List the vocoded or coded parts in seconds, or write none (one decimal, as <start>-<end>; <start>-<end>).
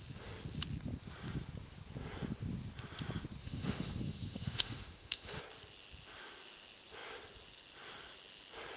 3.4-5.4